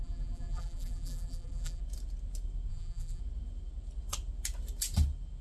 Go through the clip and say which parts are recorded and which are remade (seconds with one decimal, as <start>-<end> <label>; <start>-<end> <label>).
0.0-1.8 remade; 1.8-2.7 recorded; 2.7-3.2 remade; 3.2-5.4 recorded